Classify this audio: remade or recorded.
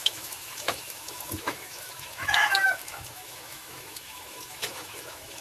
remade